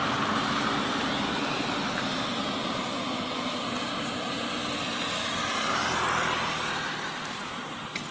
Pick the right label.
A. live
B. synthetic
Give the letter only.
A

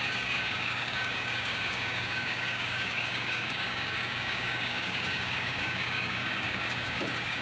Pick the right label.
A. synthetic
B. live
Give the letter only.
A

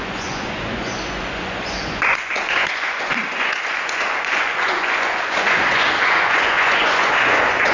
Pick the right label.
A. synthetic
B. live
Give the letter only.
A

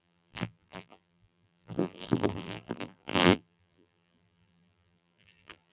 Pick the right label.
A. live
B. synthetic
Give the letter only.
B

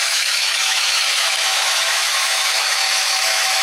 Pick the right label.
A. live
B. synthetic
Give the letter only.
B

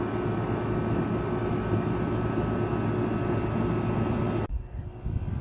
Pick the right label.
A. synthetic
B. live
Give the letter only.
B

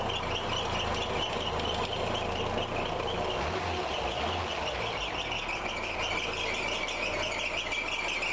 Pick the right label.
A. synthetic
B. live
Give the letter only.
B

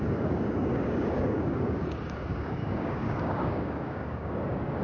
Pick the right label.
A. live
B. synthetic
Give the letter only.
B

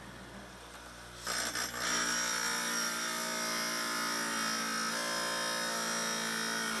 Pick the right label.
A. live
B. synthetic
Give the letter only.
A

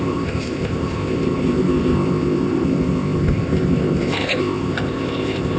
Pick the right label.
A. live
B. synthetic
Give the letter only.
B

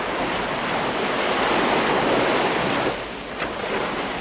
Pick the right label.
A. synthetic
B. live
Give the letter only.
B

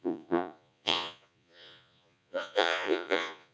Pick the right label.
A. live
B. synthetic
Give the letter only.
B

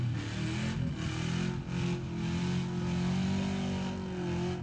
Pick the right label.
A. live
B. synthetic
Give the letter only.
A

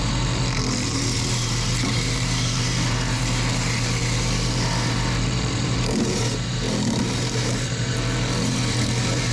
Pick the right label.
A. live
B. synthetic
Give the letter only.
B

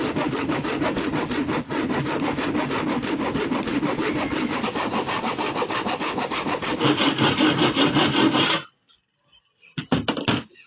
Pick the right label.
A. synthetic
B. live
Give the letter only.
B